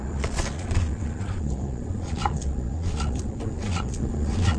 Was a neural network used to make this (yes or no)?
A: yes